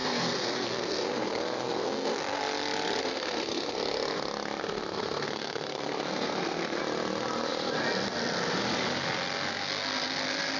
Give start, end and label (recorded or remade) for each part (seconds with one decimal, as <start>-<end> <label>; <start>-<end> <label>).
0.0-2.4 remade; 2.4-3.0 recorded; 3.0-3.8 remade; 3.8-4.6 recorded; 4.6-6.8 remade; 6.8-10.6 recorded